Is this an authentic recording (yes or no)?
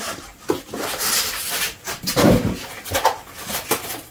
yes